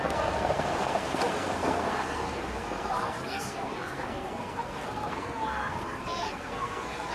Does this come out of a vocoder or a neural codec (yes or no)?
yes